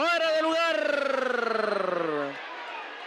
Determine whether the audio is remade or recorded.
recorded